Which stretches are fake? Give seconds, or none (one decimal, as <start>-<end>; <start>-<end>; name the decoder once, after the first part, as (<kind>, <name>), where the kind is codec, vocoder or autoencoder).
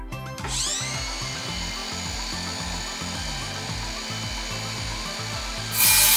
none